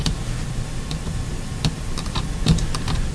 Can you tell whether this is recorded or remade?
recorded